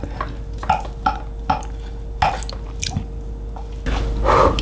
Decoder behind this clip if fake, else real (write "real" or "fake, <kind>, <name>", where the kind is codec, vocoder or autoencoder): real